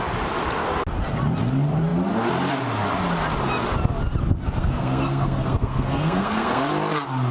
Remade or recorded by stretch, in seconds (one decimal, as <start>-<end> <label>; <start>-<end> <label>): 0.0-4.6 recorded; 4.6-6.6 remade; 6.6-7.3 recorded